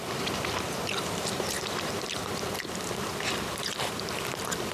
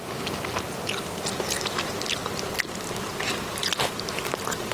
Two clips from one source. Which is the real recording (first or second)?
second